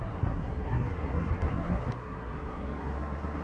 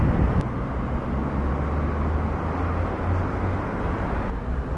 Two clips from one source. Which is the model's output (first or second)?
first